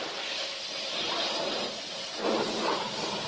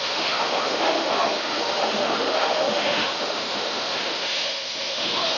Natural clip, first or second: first